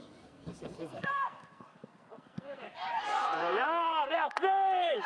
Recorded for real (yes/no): no